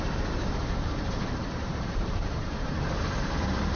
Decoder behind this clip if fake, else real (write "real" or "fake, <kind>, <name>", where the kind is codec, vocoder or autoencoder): fake, vocoder, BigVGAN v2